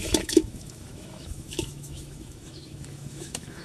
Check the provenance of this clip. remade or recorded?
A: remade